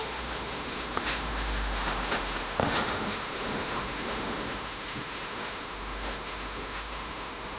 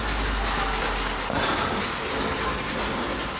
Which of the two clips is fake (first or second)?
first